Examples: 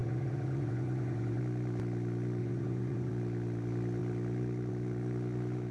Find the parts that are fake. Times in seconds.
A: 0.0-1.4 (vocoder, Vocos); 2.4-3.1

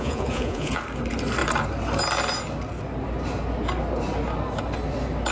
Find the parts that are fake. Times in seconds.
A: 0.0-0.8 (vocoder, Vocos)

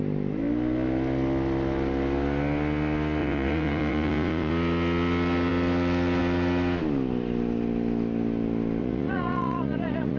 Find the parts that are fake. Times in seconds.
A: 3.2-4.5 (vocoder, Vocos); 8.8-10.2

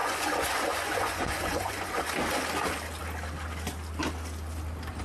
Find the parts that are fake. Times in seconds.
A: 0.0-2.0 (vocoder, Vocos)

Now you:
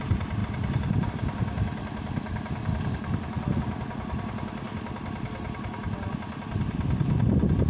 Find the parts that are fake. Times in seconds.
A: none

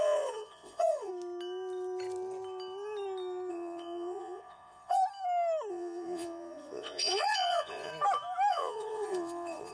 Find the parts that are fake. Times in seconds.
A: 0.0-1.1 (vocoder, Vocos); 3.5-5.0; 5.7-7.9; 8.5-9.7

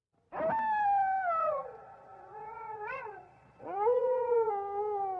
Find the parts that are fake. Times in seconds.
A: 1.4-4.5 (vocoder, Vocos)